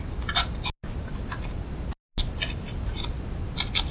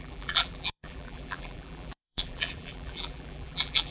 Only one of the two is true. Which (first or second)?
first